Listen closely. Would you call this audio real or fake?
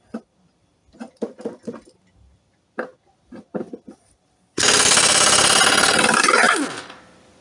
real